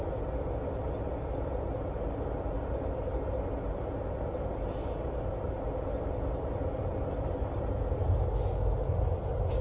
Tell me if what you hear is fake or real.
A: real